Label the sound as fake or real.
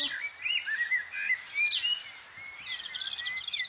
real